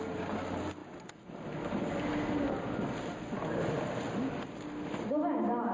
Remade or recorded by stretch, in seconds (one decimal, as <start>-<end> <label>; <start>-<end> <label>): 0.0-5.7 recorded